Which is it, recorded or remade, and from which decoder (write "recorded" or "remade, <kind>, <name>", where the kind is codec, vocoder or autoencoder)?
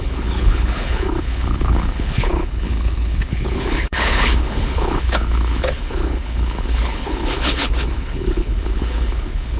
remade, codec, HILCodec